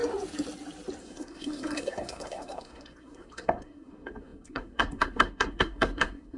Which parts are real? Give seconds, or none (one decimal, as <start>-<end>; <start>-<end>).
0.0-1.0